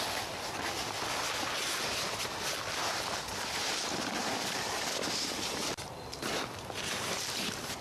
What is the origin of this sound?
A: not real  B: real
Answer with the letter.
B